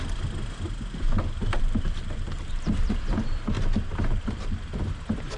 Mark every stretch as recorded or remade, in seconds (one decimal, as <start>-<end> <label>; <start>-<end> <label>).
0.0-1.4 recorded; 1.4-4.6 remade; 4.6-5.4 recorded